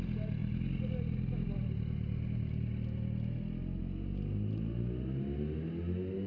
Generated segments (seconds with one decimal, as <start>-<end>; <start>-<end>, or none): none